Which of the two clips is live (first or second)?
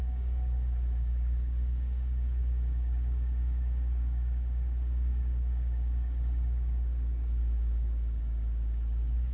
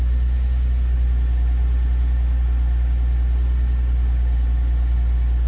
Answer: second